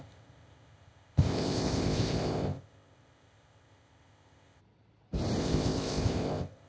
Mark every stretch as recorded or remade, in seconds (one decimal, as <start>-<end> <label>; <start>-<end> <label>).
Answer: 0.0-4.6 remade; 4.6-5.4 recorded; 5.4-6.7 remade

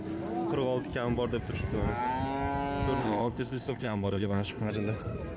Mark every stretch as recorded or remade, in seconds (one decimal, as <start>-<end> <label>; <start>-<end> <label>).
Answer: 0.0-3.0 recorded; 3.0-4.7 remade; 4.7-5.4 recorded

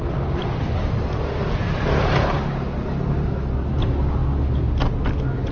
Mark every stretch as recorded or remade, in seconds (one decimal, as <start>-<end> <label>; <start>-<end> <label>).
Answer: 0.0-5.5 recorded

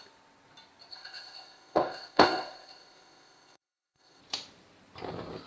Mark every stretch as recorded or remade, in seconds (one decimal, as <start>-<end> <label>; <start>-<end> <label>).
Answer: 0.0-0.9 recorded; 0.9-4.2 remade; 4.2-5.5 recorded